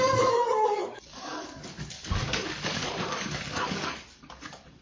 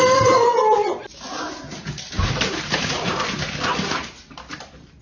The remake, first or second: first